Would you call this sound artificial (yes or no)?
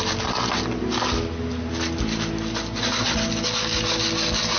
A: no